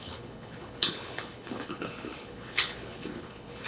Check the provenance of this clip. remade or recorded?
remade